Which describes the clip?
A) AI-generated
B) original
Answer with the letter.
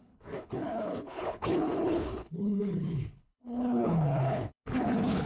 A